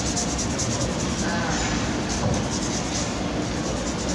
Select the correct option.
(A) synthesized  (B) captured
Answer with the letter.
B